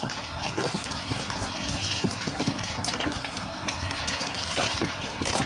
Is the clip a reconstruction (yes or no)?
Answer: yes